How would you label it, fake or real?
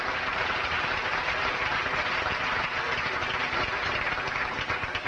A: fake